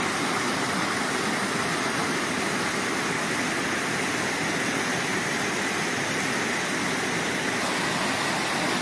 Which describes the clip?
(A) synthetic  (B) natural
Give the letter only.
B